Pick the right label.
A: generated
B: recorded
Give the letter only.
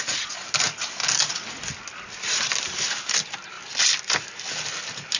B